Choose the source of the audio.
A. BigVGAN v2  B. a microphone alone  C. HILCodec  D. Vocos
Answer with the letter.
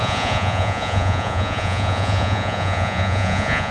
D